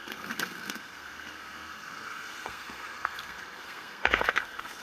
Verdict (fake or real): fake